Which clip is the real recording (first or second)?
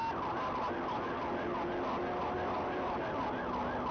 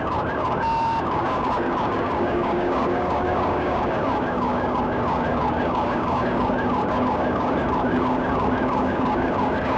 first